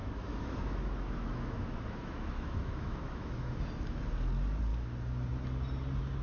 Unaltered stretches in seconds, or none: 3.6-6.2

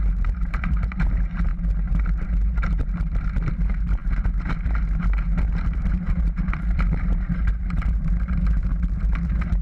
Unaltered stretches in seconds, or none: 1.5-2.1

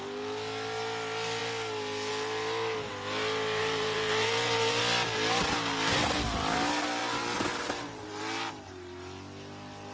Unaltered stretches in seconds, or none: 0.0-3.6; 4.8-7.0; 8.5-9.9

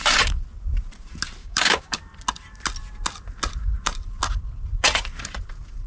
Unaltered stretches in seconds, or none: 0.0-1.4; 2.0-5.9

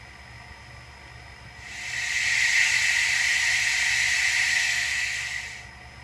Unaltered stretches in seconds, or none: 0.0-4.5; 5.4-6.0

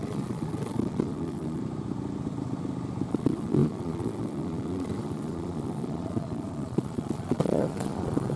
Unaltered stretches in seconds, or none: 1.6-3.1

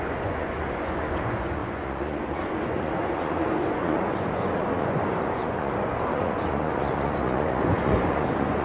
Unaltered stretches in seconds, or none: none

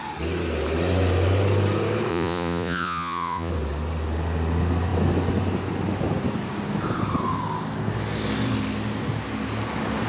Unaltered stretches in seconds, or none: 0.0-2.1; 3.5-10.1